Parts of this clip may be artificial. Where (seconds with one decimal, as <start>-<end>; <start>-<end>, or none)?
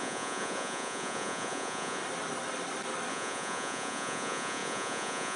0.0-2.0; 3.1-5.4